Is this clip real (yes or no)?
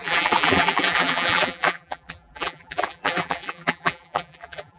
no